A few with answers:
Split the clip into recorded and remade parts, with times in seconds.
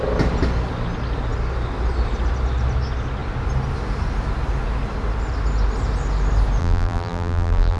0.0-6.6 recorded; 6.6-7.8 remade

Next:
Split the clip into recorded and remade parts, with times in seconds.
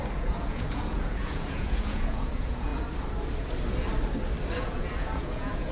0.0-2.7 remade; 2.7-4.6 recorded; 4.6-5.7 remade